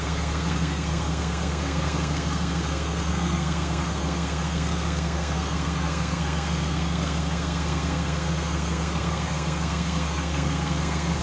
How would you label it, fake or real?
fake